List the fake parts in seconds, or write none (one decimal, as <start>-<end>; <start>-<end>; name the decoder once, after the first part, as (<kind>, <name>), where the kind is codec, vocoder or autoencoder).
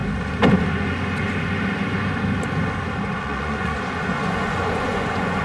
3.2-5.4 (vocoder, Vocos)